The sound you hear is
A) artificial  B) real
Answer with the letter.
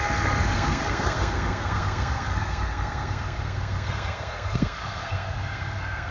A